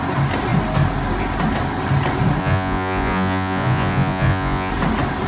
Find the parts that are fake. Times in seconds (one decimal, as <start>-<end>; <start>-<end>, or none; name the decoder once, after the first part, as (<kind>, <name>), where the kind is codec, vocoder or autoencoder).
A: 2.4-4.7 (vocoder, Vocos)